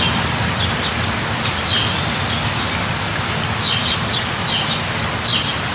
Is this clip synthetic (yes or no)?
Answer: no